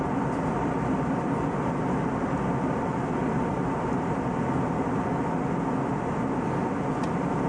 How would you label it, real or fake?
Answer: real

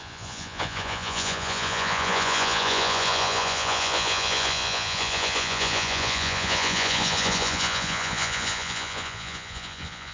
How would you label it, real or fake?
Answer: fake